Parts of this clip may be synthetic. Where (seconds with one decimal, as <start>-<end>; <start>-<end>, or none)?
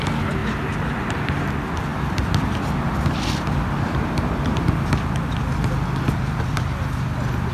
none